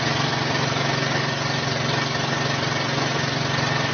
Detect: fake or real real